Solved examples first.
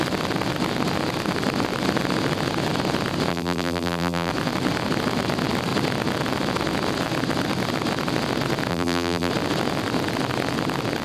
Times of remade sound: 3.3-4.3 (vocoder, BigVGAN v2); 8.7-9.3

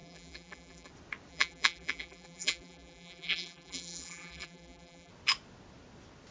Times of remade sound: 0.0-0.9 (vocoder, BigVGAN v2); 1.3-5.1

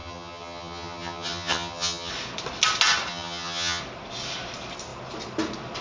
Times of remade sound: 0.0-2.1 (vocoder, HiFi-GAN); 3.1-3.8

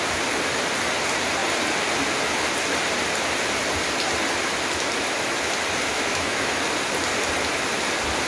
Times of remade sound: 5.9-6.5 (autoencoder, DAC-VAE)

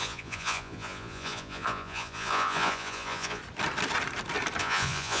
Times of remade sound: 0.0-3.4 (vocoder, Vocos); 4.6-5.2